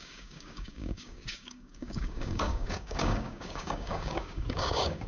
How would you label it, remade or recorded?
remade